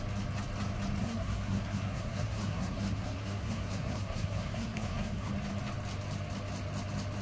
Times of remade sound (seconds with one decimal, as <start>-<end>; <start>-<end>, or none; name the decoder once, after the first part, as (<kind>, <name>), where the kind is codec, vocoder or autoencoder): 1.0-5.3 (codec, SNAC)